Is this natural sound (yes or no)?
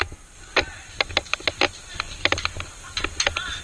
yes